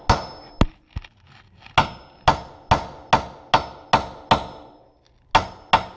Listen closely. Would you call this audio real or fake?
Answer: real